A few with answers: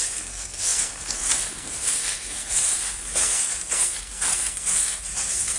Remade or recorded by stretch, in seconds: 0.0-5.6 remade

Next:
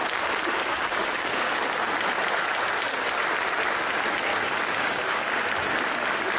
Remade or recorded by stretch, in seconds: 0.0-0.6 recorded; 0.6-1.6 remade; 1.6-4.3 recorded; 4.3-5.3 remade; 5.3-6.4 recorded

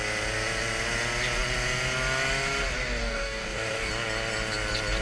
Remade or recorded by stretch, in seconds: 0.0-3.0 recorded; 3.0-3.9 remade; 3.9-5.0 recorded

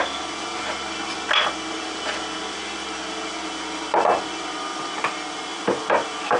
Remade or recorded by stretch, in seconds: 0.0-6.4 recorded

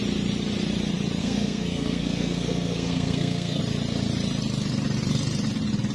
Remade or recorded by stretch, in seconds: 0.0-1.2 recorded; 1.2-3.6 remade; 3.6-5.9 recorded